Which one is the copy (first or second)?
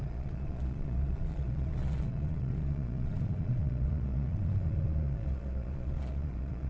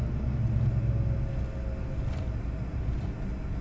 first